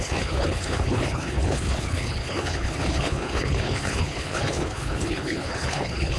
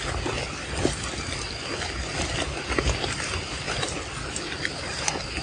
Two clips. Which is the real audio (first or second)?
second